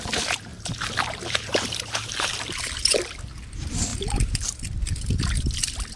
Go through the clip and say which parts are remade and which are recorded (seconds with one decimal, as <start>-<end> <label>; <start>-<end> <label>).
0.0-0.5 recorded; 0.5-3.0 remade; 3.0-3.9 recorded; 3.9-5.5 remade; 5.5-6.0 recorded